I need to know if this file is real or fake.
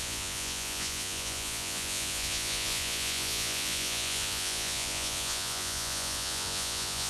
fake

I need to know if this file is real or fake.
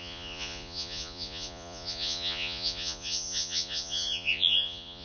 fake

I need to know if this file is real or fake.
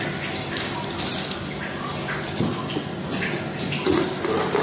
real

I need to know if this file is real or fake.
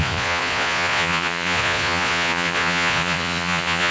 fake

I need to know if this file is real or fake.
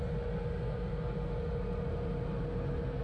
real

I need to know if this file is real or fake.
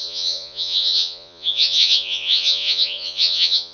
fake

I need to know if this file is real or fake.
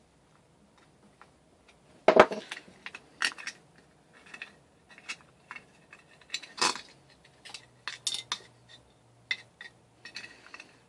real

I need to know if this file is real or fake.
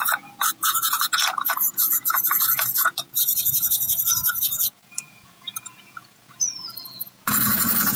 fake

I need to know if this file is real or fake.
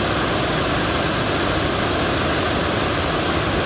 real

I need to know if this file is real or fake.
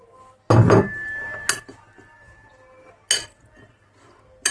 real